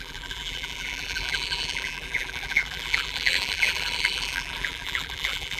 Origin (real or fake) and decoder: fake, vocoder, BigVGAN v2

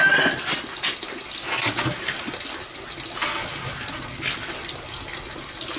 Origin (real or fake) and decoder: real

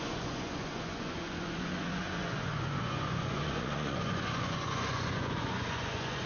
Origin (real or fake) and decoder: fake, vocoder, Vocos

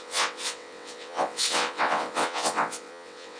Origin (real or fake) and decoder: fake, vocoder, WaveNeXt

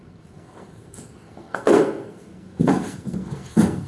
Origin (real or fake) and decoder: fake, codec, SNAC